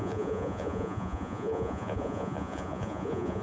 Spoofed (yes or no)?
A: yes